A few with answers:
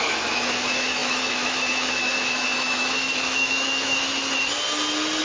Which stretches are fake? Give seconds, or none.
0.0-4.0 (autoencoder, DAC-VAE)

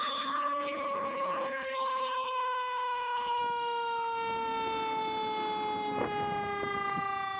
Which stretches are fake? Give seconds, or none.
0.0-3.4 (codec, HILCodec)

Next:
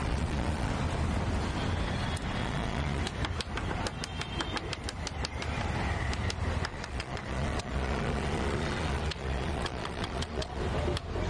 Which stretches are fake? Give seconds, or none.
0.0-0.7 (vocoder, Vocos); 2.4-3.0; 6.7-10.6

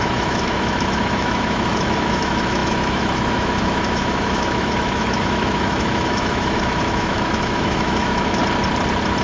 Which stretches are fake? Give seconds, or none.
0.0-8.4 (autoencoder, DAC-VAE)